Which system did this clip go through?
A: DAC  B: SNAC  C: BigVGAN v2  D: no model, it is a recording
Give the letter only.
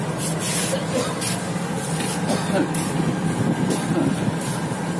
D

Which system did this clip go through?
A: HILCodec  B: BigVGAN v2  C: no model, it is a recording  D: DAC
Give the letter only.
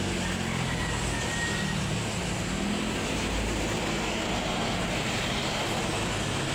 C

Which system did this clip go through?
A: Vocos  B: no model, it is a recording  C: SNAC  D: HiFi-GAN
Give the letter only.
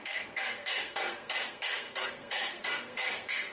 C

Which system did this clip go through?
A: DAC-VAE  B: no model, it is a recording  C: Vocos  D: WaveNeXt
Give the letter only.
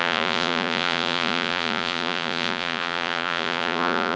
C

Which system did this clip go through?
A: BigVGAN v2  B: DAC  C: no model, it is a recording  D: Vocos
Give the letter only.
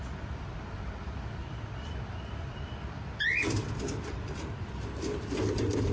C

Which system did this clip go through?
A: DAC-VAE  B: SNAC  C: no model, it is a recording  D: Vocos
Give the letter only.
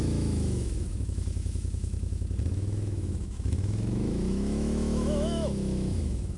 A